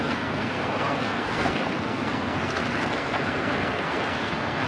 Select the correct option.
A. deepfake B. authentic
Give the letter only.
A